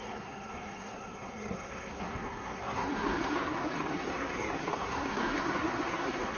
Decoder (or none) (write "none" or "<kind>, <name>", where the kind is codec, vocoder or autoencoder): codec, SNAC